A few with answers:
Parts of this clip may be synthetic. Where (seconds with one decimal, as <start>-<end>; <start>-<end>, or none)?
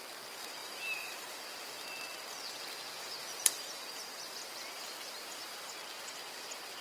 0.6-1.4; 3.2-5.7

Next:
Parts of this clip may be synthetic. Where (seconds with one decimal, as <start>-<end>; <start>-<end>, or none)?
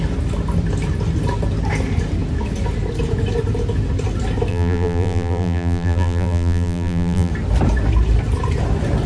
4.5-7.3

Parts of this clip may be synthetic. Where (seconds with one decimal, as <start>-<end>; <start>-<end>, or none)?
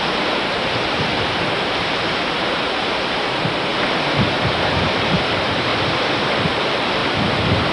0.0-3.7; 4.7-5.7; 6.6-7.0